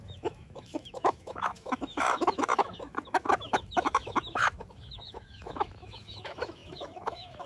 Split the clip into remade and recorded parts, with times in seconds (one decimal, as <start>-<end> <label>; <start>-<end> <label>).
0.0-7.5 remade

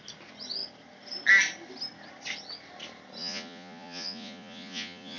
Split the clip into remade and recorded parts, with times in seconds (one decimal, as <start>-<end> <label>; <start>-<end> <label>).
0.0-3.2 recorded; 3.2-5.2 remade

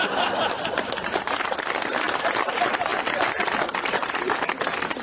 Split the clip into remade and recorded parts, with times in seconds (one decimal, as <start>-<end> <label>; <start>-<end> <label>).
0.0-2.9 remade; 2.9-3.6 recorded; 3.6-5.0 remade

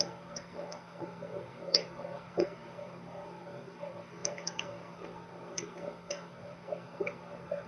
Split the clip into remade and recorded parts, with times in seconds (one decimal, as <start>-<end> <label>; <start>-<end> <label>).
0.0-7.7 remade